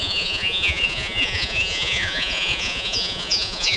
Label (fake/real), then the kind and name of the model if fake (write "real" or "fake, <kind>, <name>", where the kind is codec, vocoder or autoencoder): fake, vocoder, Vocos